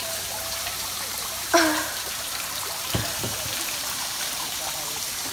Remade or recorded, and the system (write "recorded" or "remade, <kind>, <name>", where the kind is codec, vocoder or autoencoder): remade, vocoder, BigVGAN v2